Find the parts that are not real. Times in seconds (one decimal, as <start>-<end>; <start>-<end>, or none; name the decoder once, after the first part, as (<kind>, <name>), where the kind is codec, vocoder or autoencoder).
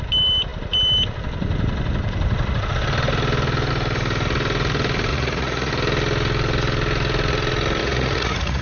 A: 5.1-5.7 (vocoder, Vocos); 7.8-8.6